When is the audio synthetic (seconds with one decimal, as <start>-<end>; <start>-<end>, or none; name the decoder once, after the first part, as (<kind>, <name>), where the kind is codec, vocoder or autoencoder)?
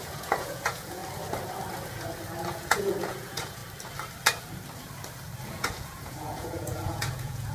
0.0-1.0 (vocoder, Vocos); 2.5-3.6; 5.5-7.5